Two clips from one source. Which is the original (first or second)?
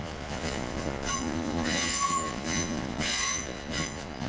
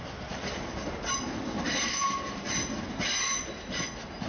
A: second